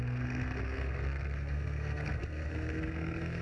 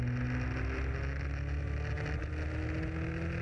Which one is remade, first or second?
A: first